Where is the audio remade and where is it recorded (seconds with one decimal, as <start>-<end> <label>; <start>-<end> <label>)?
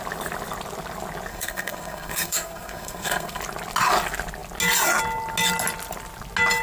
0.0-1.3 recorded; 1.3-3.4 remade; 3.4-6.6 recorded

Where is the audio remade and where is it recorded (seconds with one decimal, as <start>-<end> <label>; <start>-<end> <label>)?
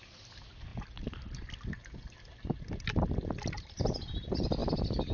0.0-5.1 recorded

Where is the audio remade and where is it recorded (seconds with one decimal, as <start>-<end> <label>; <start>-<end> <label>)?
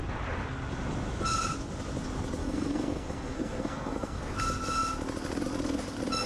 0.0-2.4 recorded; 2.4-4.3 remade; 4.3-6.3 recorded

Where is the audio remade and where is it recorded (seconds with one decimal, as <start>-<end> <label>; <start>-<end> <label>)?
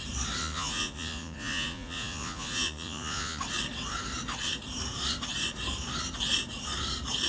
0.0-0.4 recorded; 0.4-3.4 remade; 3.4-7.3 recorded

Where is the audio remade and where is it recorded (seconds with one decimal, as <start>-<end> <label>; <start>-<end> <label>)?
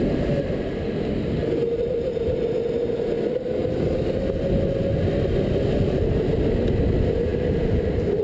0.0-8.2 recorded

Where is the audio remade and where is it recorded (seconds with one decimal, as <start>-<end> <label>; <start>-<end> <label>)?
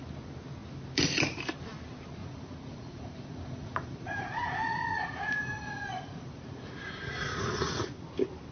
0.0-2.2 recorded; 2.2-6.7 remade; 6.7-7.3 recorded; 7.3-8.0 remade; 8.0-8.5 recorded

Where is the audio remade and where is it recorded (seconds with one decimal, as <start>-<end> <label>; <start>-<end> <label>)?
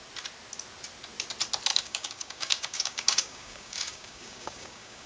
0.0-1.7 recorded; 1.7-5.1 remade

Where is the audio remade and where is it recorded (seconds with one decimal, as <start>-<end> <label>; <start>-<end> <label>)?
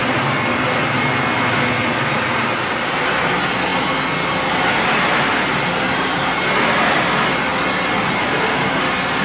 0.0-9.2 recorded